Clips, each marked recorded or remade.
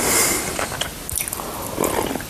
remade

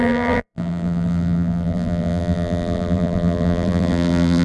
remade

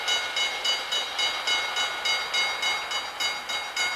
recorded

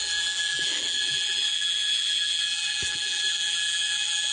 remade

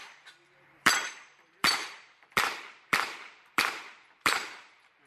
remade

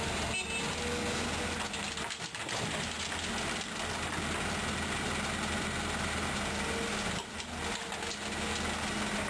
recorded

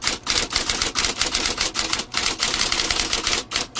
recorded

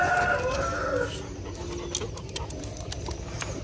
recorded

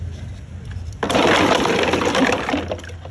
recorded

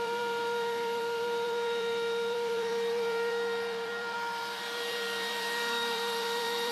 remade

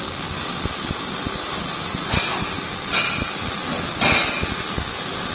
recorded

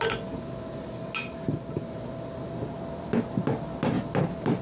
recorded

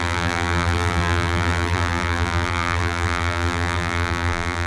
remade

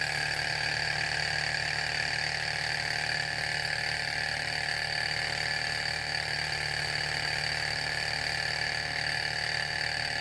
recorded